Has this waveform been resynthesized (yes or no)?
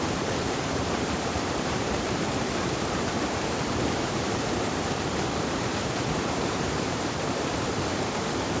yes